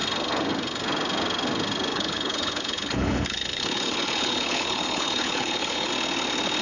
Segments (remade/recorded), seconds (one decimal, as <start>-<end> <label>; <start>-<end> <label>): 0.0-1.9 recorded; 1.9-5.9 remade; 5.9-6.6 recorded